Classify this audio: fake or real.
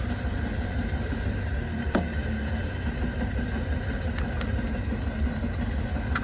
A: fake